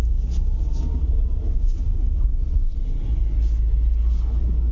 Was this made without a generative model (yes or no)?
yes